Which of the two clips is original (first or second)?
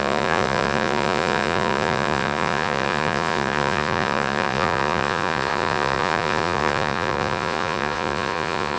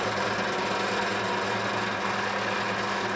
second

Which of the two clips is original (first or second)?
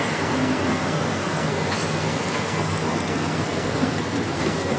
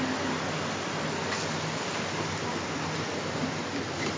second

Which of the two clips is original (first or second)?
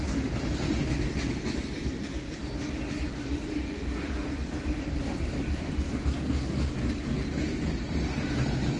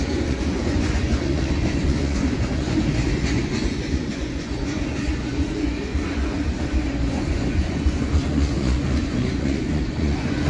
first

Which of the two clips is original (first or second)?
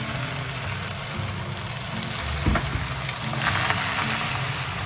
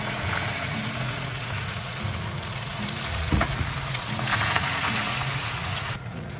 first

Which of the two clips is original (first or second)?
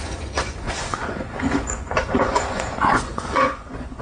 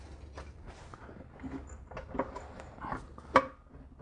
second